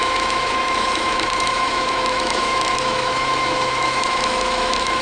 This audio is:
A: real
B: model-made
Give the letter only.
B